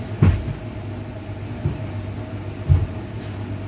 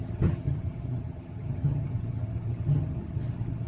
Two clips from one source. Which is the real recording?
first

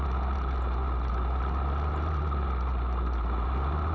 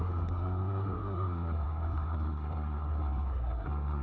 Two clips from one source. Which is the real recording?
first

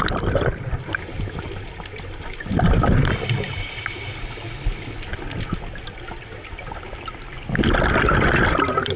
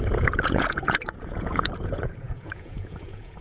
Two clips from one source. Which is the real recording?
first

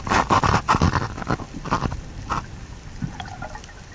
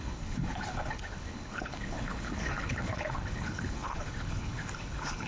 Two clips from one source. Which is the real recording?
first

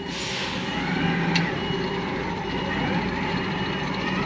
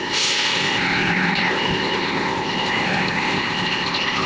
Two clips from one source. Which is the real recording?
first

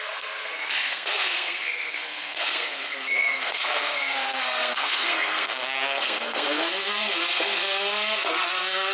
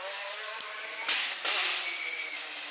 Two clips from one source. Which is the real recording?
second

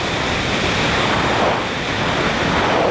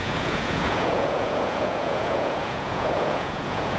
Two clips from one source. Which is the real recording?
first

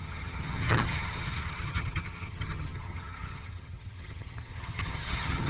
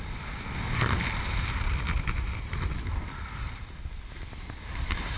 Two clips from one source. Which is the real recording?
second